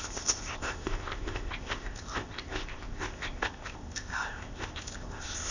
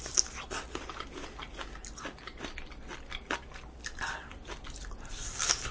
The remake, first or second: first